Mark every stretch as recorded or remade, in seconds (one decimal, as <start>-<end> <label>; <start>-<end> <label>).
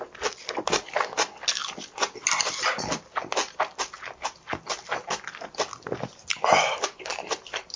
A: 0.0-7.8 recorded